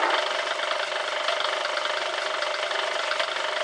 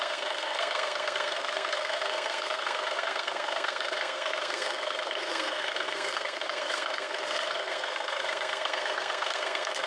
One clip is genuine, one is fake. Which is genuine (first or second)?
first